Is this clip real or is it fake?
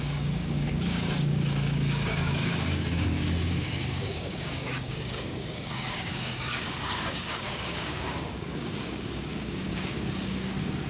fake